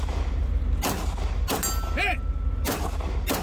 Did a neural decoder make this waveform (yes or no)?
no